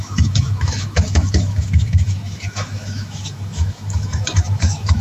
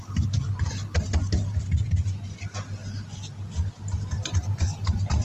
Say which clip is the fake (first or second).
first